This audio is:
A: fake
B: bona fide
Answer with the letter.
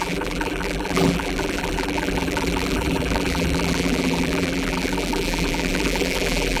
A